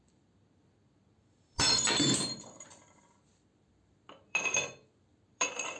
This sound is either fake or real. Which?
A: fake